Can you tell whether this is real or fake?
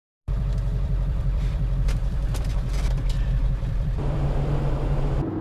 fake